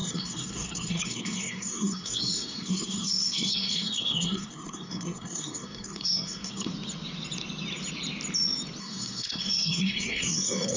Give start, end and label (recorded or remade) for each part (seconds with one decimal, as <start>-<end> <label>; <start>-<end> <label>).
0.0-6.7 remade; 6.7-8.8 recorded; 8.8-10.8 remade